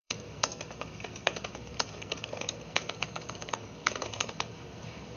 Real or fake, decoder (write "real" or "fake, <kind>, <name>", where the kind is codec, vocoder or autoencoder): fake, codec, SNAC